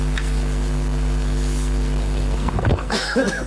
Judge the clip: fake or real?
fake